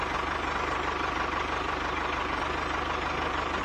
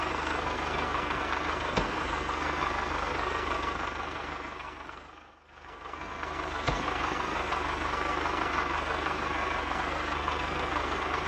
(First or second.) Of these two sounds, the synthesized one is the second